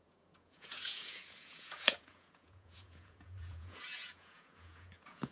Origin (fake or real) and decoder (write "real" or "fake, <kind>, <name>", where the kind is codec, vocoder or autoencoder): fake, vocoder, Vocos